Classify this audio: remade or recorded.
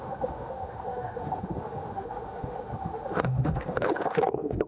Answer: remade